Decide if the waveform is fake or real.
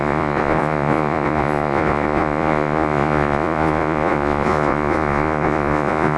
fake